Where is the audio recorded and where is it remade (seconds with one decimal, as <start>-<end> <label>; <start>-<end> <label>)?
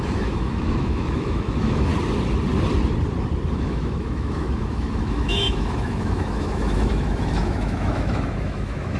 0.0-1.9 remade; 1.9-3.5 recorded; 3.5-9.0 remade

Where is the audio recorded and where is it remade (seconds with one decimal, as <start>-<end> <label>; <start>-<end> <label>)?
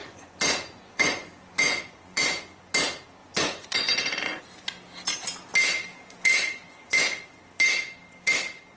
0.0-2.5 remade; 2.5-3.2 recorded; 3.2-4.4 remade; 4.4-5.9 recorded; 5.9-7.2 remade; 7.2-8.8 recorded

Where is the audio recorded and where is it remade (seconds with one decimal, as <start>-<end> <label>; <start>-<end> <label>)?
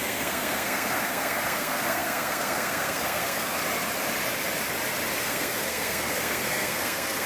0.0-3.6 remade; 3.6-5.2 recorded; 5.2-7.3 remade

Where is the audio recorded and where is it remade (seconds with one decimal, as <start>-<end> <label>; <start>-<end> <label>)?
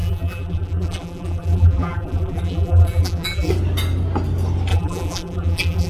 0.0-3.5 remade; 3.5-4.7 recorded; 4.7-5.9 remade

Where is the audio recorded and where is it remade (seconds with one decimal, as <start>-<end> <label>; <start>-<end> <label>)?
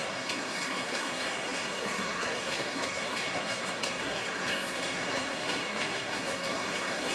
0.0-7.1 remade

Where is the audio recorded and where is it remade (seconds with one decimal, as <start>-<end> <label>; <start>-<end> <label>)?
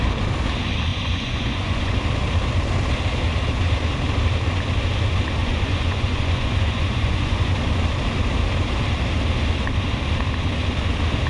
0.0-0.9 recorded; 0.9-1.9 remade; 1.9-5.4 recorded; 5.4-7.5 remade; 7.5-11.3 recorded